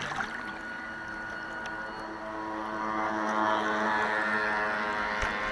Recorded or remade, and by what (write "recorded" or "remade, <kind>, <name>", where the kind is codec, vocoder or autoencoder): recorded